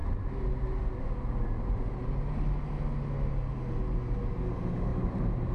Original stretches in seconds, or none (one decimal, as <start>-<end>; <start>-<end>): 0.0-4.9